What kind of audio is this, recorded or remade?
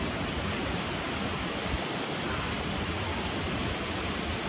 recorded